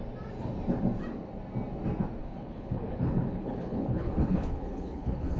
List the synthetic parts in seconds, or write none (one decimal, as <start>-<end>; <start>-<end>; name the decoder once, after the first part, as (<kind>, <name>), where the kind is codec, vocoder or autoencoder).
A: 2.2-5.4 (codec, HILCodec)